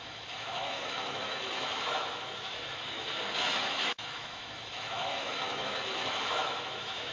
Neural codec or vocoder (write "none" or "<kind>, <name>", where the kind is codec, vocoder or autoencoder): autoencoder, DAC-VAE